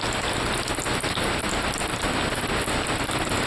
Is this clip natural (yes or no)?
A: yes